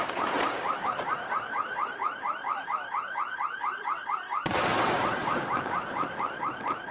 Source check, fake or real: fake